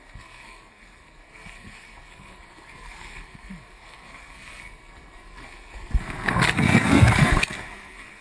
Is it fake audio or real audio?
fake